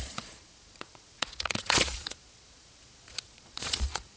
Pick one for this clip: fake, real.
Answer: fake